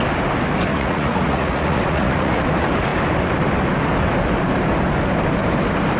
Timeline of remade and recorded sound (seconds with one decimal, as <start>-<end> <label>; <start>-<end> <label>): 0.0-0.7 recorded; 0.7-2.4 remade; 2.4-6.0 recorded